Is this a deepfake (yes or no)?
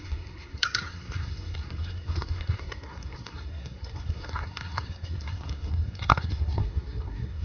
yes